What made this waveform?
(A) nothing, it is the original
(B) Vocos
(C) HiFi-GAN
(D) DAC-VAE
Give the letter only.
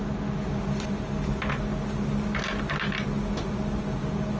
A